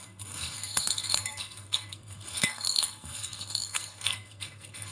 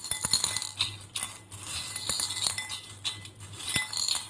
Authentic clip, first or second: second